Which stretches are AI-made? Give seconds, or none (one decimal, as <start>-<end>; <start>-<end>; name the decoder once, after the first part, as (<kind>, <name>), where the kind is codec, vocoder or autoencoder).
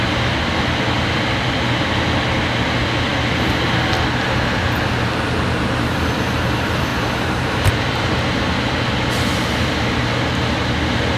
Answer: 6.9-8.1 (vocoder, BigVGAN v2)